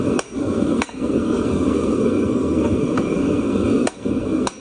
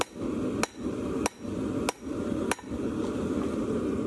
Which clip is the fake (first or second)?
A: first